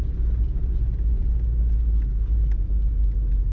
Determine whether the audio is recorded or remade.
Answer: recorded